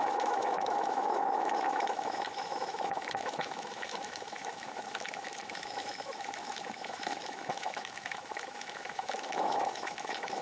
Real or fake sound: fake